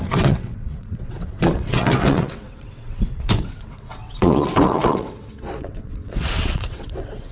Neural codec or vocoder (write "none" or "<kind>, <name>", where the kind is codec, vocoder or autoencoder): vocoder, WaveNeXt